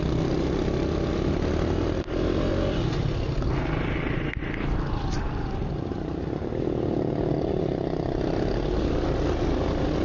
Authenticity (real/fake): real